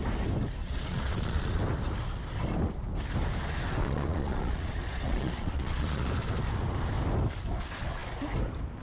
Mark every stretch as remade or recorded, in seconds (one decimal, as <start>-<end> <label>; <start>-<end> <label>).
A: 0.0-0.6 recorded; 0.6-1.6 remade; 1.6-3.8 recorded; 3.8-6.1 remade; 6.1-8.8 recorded